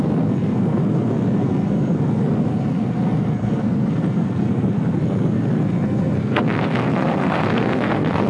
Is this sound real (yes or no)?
no